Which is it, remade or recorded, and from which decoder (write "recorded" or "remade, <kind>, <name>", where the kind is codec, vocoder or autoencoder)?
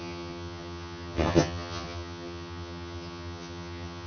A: remade, vocoder, HiFi-GAN